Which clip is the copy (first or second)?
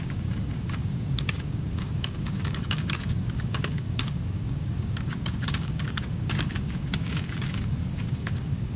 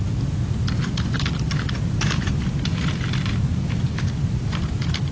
first